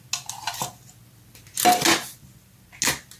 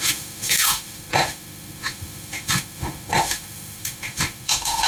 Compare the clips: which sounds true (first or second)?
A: first